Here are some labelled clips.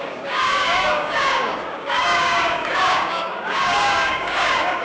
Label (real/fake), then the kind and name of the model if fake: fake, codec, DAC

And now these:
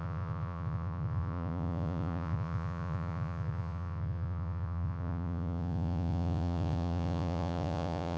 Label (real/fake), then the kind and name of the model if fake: fake, vocoder, Vocos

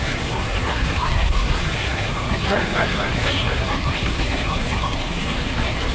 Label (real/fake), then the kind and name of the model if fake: fake, codec, SNAC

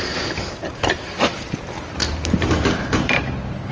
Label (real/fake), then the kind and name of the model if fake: real